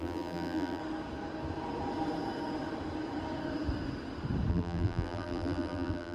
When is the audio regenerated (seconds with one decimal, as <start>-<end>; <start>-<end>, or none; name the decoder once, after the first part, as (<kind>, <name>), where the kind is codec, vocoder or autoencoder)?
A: 0.0-0.8 (vocoder, BigVGAN v2); 4.5-6.1